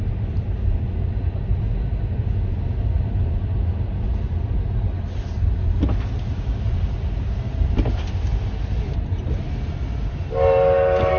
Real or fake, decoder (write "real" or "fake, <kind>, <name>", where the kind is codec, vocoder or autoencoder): real